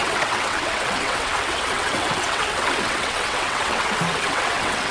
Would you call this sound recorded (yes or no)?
no